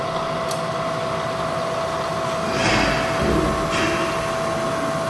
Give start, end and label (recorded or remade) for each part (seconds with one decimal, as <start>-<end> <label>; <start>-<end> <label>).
0.0-5.1 recorded